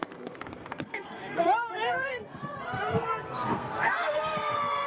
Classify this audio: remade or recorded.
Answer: remade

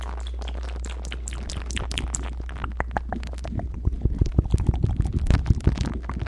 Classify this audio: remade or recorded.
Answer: recorded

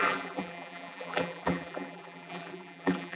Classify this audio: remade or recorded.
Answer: remade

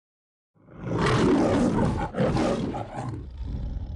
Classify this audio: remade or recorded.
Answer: remade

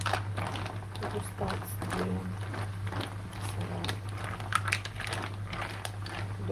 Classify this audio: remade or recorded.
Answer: recorded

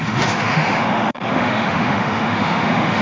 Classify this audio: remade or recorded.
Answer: remade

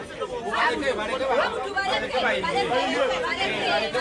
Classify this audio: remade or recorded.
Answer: recorded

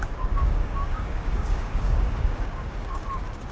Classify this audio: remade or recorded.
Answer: remade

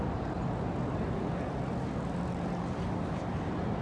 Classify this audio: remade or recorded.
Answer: recorded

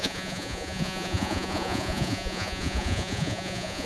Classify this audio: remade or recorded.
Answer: remade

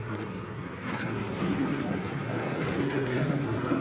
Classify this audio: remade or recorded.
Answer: remade